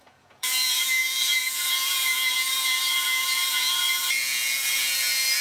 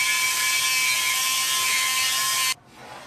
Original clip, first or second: second